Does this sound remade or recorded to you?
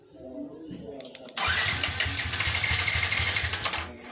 recorded